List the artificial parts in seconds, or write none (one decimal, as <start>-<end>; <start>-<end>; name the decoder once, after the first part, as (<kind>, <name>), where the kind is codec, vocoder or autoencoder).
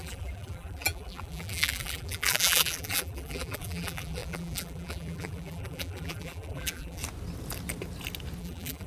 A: 0.0-7.0 (vocoder, BigVGAN v2); 8.4-8.9